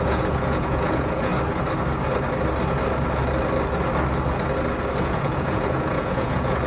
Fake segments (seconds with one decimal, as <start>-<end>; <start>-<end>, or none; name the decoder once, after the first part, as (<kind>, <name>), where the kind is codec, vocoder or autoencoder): 0.0-1.3 (vocoder, Vocos); 5.0-6.7